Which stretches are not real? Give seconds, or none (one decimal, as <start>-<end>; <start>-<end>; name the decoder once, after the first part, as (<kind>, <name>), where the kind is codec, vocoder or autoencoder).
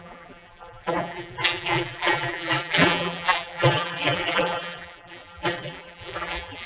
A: 0.0-6.7 (vocoder, BigVGAN v2)